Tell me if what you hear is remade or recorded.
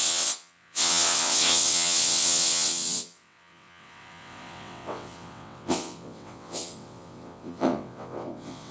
remade